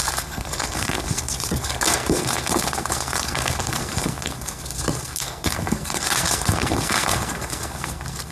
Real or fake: fake